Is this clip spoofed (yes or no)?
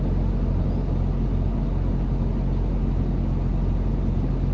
no